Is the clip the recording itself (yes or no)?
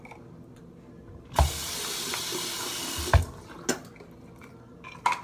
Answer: yes